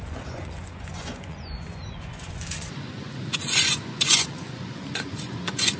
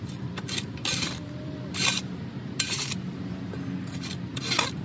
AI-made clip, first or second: first